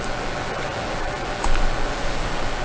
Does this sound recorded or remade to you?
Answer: recorded